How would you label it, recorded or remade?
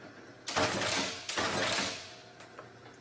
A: recorded